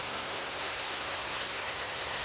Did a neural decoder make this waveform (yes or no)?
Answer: yes